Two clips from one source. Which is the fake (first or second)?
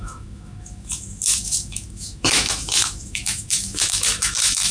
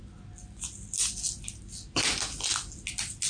first